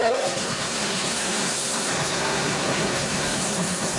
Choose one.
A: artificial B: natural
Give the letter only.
A